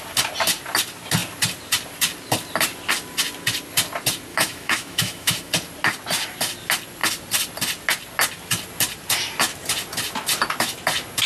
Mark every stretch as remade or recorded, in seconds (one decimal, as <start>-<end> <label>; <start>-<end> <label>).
0.0-4.3 recorded; 4.3-5.5 remade; 5.5-11.3 recorded